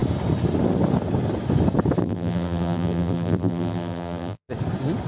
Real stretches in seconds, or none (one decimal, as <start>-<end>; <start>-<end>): 0.0-2.0; 4.5-5.1